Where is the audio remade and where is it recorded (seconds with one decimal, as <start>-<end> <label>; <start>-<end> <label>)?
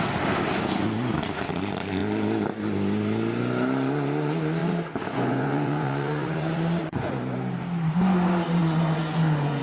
0.0-4.6 recorded; 4.6-7.1 remade; 7.1-8.6 recorded; 8.6-9.6 remade